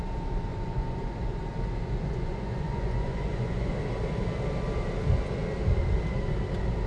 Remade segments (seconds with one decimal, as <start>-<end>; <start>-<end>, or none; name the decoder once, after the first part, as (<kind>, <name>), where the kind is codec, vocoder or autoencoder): 0.5-1.4 (vocoder, Vocos); 1.8-3.7